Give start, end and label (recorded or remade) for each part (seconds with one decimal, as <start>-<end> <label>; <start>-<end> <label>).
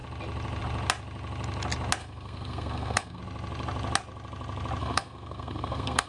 0.0-2.0 recorded; 2.0-3.2 remade; 3.2-4.8 recorded; 4.8-6.1 remade